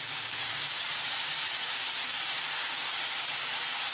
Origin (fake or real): fake